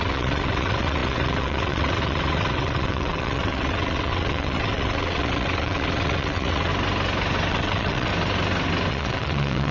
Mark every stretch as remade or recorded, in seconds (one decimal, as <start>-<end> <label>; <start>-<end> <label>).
0.0-6.7 remade; 6.7-7.5 recorded; 7.5-8.1 remade; 8.1-8.9 recorded; 8.9-9.7 remade